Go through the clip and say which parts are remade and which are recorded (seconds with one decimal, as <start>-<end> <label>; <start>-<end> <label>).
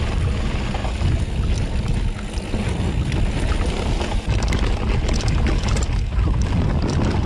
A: 0.0-7.3 recorded